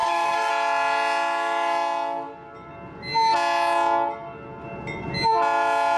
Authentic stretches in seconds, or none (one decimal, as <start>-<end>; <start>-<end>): 0.5-6.0